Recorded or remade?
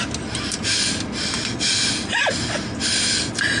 recorded